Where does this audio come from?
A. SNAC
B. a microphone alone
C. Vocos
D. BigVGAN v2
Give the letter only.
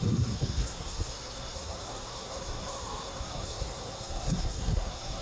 A